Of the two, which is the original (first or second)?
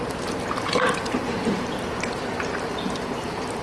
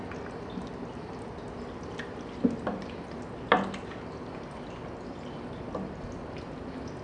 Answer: second